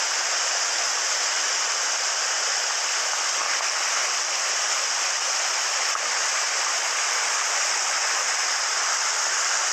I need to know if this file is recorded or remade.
recorded